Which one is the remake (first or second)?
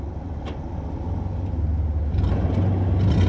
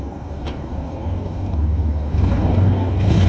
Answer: second